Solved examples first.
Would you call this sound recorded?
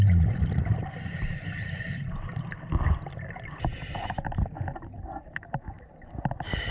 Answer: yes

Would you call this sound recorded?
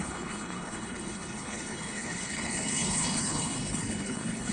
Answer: no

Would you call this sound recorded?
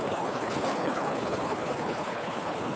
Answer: no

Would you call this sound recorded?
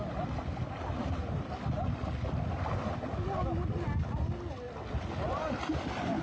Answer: yes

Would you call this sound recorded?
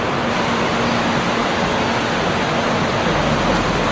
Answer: yes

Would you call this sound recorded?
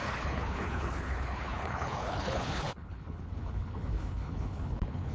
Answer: no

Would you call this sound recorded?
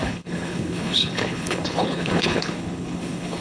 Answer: no